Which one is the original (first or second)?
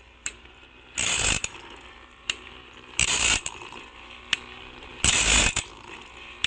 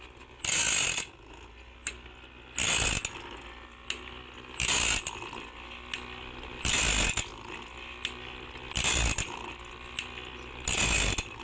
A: second